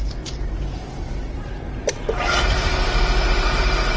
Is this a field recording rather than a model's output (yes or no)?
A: no